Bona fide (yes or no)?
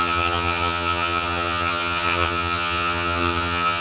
no